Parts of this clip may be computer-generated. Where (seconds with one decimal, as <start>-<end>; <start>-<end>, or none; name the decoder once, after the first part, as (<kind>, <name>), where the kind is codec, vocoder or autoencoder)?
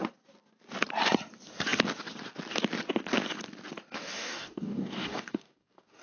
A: 4.0-6.0 (codec, DAC)